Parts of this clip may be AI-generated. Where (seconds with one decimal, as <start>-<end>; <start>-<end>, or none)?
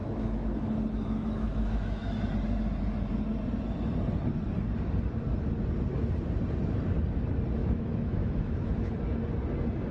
0.0-2.2; 7.6-8.9